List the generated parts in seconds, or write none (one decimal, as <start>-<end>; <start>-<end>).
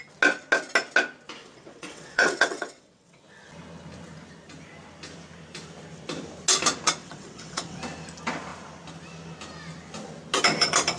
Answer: 1.4-3.2; 7.0-7.8